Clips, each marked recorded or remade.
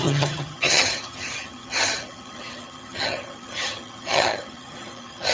remade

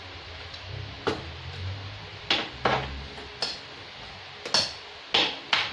recorded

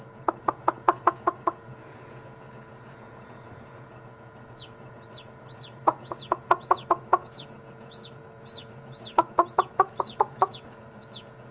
remade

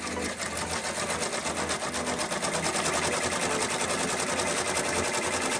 recorded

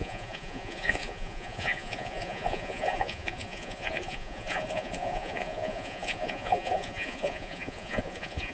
remade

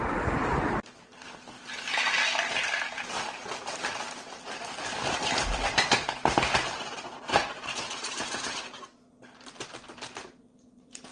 recorded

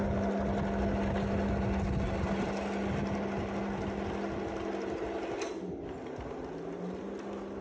recorded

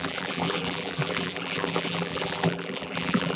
remade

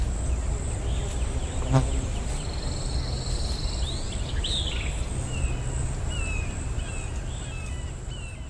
recorded